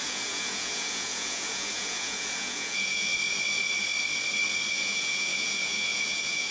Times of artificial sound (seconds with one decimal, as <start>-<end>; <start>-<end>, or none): 0.0-3.1; 4.7-6.5